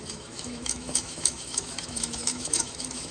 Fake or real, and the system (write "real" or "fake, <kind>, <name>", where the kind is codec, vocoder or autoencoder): fake, autoencoder, DAC-VAE